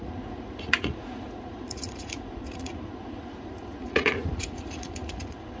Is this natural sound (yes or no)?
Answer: no